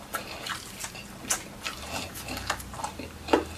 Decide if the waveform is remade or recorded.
recorded